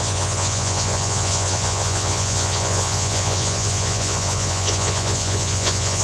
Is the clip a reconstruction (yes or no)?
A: yes